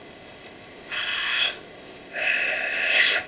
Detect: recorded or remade remade